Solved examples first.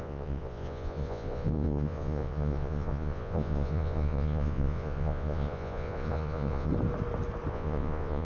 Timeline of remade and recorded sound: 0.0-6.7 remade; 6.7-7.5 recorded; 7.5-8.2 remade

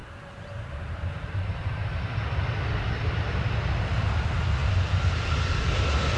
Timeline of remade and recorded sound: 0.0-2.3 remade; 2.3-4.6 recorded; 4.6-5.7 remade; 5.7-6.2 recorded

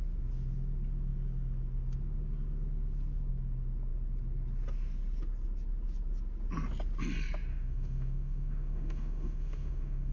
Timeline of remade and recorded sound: 0.0-7.5 recorded; 7.5-10.1 remade

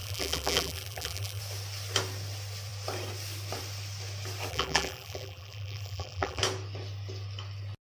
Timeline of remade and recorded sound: 0.0-1.4 remade; 1.4-4.5 recorded; 4.5-6.4 remade; 6.4-7.8 recorded

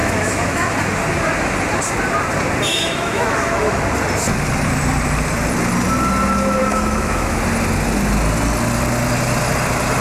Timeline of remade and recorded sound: 0.0-0.7 remade; 0.7-2.7 recorded; 2.7-3.8 remade; 3.8-6.6 recorded; 6.6-7.4 remade; 7.4-10.0 recorded

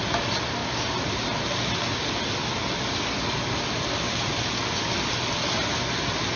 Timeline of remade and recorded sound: 0.0-6.4 recorded

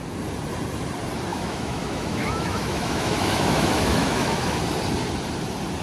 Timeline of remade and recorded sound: 0.0-1.3 recorded; 1.3-4.6 remade; 4.6-5.8 recorded

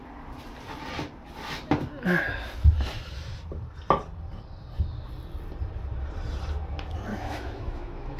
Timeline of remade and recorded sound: 0.0-7.1 recorded; 7.1-8.2 remade